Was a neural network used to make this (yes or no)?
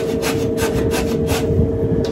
no